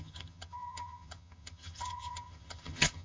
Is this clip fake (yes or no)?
yes